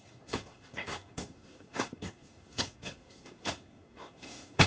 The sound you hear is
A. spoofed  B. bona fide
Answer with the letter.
A